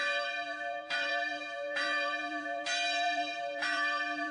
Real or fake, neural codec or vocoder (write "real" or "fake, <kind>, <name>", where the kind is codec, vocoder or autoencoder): fake, vocoder, BigVGAN v2